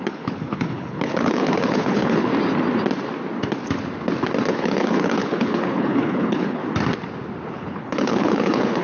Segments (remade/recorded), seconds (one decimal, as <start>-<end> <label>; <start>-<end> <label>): 0.0-2.3 remade; 2.3-4.5 recorded; 4.5-6.6 remade; 6.6-7.5 recorded; 7.5-8.8 remade